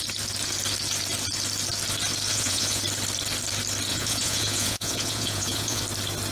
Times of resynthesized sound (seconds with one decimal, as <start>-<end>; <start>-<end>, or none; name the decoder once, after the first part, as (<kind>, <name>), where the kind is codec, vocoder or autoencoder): 2.3-2.8 (vocoder, Vocos); 3.9-5.8